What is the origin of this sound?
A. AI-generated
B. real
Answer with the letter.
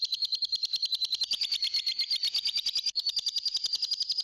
B